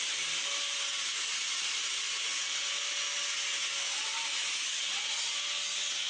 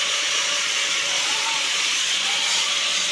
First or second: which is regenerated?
second